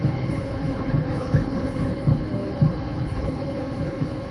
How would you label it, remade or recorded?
remade